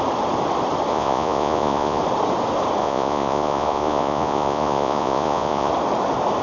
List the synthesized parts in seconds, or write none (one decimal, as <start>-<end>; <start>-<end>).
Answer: 0.9-2.0; 2.8-5.7